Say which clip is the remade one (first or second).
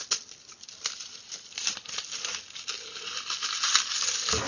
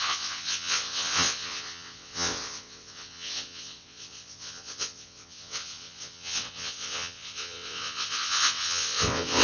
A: second